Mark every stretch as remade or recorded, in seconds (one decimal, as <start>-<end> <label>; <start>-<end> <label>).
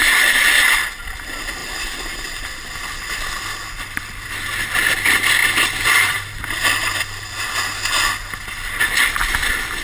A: 0.0-1.6 recorded; 1.6-2.4 remade; 2.4-9.8 recorded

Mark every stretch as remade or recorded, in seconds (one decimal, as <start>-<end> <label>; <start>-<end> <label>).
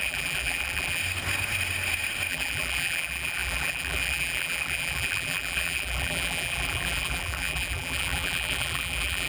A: 0.0-1.0 remade; 1.0-2.3 recorded; 2.3-9.3 remade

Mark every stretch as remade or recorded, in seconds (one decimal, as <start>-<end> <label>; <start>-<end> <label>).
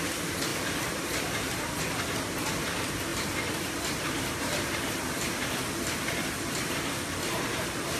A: 0.0-0.5 recorded; 0.5-1.8 remade; 1.8-3.1 recorded; 3.1-5.7 remade; 5.7-8.0 recorded